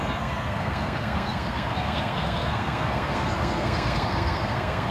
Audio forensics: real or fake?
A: fake